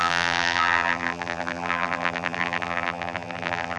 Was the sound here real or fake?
fake